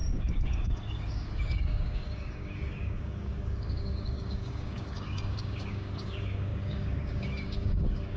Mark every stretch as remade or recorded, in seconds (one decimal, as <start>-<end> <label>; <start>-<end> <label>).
0.0-8.2 remade